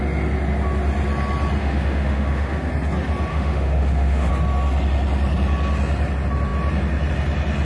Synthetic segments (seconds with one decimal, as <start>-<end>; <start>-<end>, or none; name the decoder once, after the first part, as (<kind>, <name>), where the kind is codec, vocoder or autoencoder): 1.6-2.7 (autoencoder, DAC-VAE); 3.3-4.3